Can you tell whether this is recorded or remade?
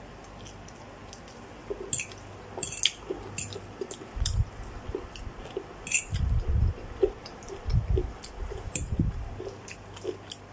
recorded